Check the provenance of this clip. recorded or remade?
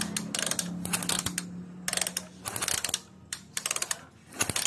recorded